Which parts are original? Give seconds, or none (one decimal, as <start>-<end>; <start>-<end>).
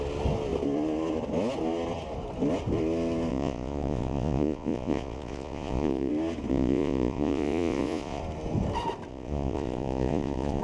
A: 0.0-3.3; 6.1-6.5; 8.2-9.1